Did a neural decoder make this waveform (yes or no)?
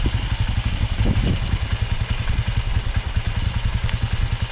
no